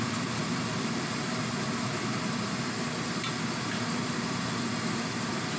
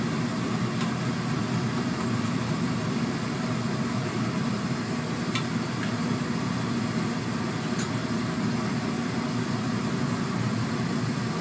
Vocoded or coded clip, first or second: first